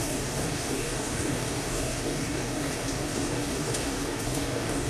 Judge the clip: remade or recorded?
remade